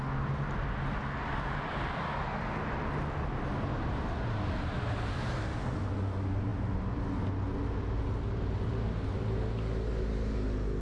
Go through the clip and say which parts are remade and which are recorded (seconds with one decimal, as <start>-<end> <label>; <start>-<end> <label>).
0.0-10.8 recorded

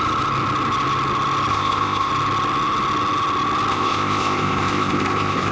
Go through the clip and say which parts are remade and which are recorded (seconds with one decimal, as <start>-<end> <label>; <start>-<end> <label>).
0.0-1.5 recorded; 1.5-2.1 remade; 2.1-3.7 recorded; 3.7-5.5 remade

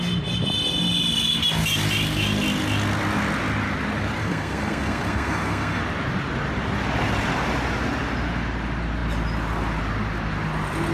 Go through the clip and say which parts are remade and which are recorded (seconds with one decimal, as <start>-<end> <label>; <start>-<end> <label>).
0.0-4.2 recorded; 4.2-5.8 remade; 5.8-10.9 recorded

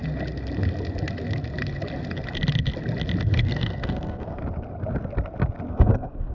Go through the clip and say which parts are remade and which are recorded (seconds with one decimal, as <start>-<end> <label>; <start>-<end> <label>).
0.0-3.2 recorded; 3.2-4.4 remade; 4.4-5.7 recorded; 5.7-6.3 remade

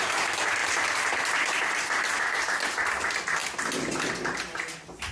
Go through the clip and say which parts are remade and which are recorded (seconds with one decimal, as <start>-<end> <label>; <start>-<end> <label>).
0.0-5.1 recorded